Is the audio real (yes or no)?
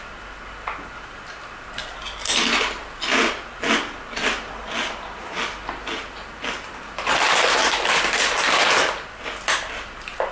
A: yes